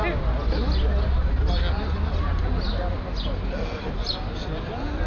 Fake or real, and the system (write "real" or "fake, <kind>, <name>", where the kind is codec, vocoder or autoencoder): real